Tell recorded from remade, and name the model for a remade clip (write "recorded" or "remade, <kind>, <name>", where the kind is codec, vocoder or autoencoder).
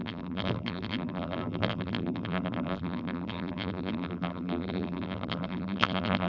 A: remade, vocoder, BigVGAN v2